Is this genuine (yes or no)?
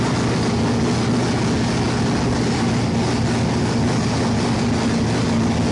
yes